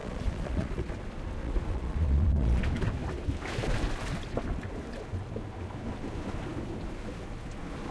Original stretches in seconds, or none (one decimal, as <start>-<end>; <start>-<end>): 0.9-1.4; 2.6-7.9